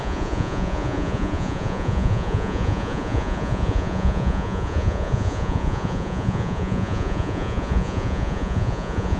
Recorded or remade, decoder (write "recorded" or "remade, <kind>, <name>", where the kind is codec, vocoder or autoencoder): remade, vocoder, Vocos